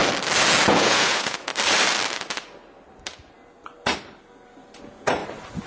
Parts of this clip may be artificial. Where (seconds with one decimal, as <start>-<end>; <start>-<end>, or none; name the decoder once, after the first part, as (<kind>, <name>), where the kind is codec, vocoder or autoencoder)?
0.7-1.5 (vocoder, Vocos); 4.8-5.2